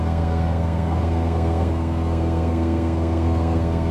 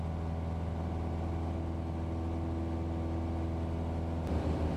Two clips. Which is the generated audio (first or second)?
first